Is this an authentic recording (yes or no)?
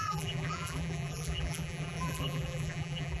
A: no